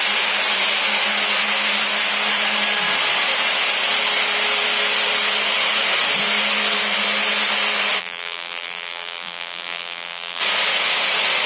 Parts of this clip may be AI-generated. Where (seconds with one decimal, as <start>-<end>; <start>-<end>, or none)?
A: 8.0-10.4